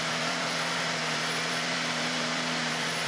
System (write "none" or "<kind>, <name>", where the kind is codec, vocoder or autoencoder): vocoder, BigVGAN v2